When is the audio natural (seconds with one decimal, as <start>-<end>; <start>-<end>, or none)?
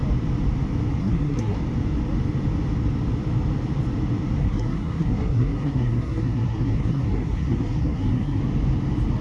0.0-1.0; 1.6-4.4; 8.4-9.2